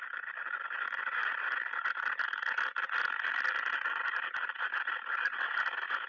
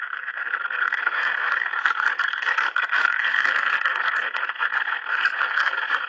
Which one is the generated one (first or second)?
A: second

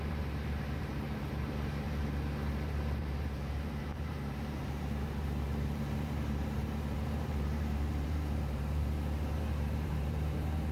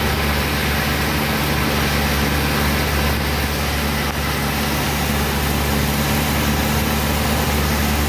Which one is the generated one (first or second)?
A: first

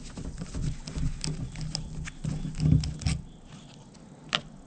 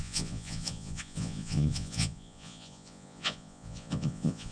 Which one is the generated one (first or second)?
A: second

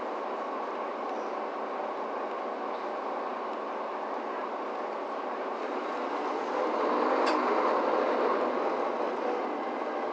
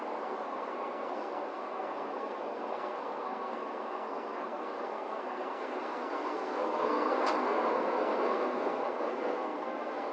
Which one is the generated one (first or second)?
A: second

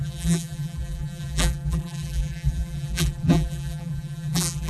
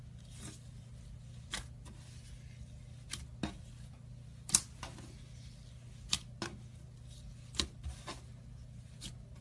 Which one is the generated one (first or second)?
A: first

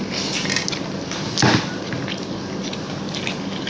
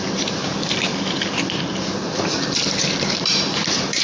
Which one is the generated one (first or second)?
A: second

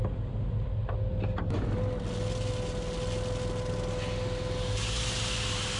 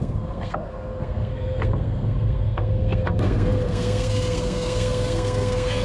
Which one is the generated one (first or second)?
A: second